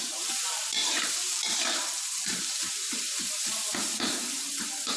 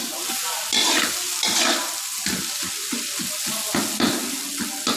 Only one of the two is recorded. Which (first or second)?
second